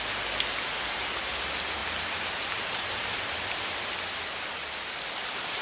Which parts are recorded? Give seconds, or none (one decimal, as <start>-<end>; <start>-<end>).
0.0-5.6